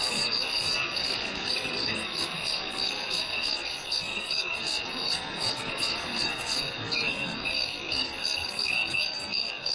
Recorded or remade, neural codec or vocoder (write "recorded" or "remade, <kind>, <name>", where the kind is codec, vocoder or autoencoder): remade, codec, SNAC